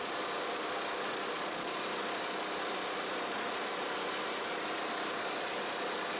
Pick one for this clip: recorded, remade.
recorded